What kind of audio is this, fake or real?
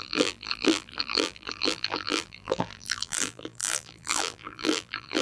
fake